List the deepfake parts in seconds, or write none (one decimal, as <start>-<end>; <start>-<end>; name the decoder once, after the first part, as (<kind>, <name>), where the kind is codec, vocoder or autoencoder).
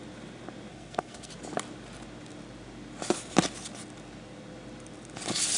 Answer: 0.7-1.3 (codec, SNAC)